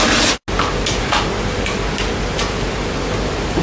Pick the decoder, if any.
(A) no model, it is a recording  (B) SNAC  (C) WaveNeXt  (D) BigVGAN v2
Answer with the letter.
A